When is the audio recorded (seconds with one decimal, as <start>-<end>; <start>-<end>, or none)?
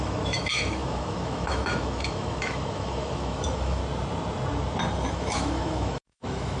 3.8-5.1